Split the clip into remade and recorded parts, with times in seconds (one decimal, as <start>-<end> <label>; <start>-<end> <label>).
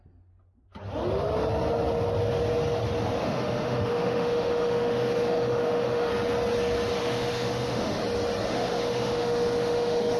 0.0-3.2 recorded; 3.2-6.1 remade; 6.1-7.0 recorded; 7.0-8.0 remade; 8.0-8.5 recorded; 8.5-10.2 remade